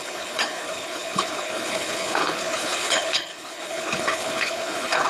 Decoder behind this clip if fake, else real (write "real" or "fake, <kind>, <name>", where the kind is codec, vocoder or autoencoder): fake, codec, HILCodec